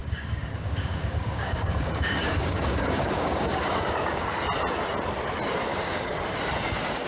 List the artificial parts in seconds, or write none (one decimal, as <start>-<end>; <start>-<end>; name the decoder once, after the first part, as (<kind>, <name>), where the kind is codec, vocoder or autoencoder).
0.0-4.3 (codec, DAC); 5.7-6.2